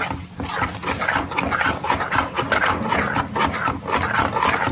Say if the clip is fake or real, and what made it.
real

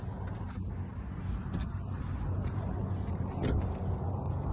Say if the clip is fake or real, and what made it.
real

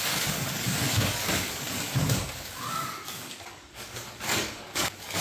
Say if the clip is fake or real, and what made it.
fake, codec, DAC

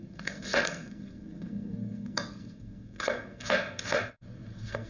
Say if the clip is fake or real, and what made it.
fake, codec, SNAC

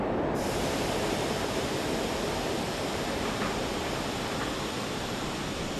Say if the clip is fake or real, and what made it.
real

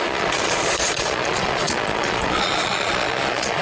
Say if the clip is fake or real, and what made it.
fake, vocoder, Vocos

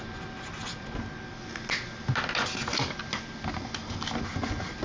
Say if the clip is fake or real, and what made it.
real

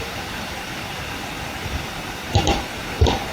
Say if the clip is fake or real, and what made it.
fake, vocoder, BigVGAN v2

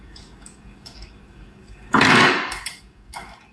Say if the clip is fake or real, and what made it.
fake, codec, DAC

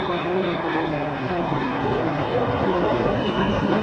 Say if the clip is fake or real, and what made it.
fake, codec, SNAC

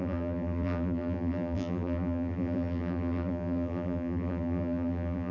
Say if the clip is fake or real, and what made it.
fake, vocoder, BigVGAN v2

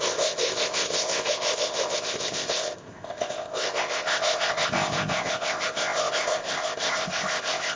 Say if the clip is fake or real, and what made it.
fake, codec, ZipCodec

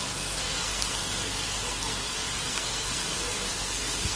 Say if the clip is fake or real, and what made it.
fake, codec, SNAC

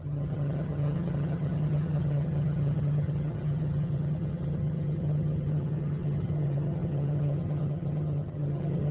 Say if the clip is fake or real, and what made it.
fake, vocoder, HiFi-GAN